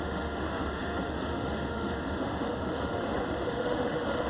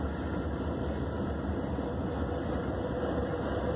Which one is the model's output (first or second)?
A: first